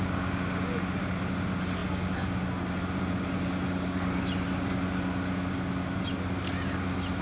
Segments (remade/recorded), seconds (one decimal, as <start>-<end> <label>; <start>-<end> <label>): 0.0-7.2 recorded